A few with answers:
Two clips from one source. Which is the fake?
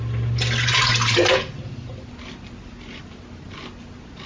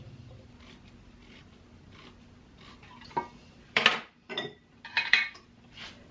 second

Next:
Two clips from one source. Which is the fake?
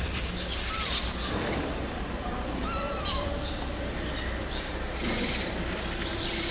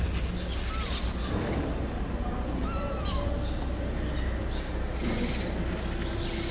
first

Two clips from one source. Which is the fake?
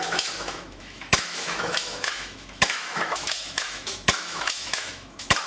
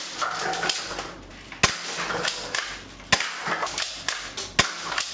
first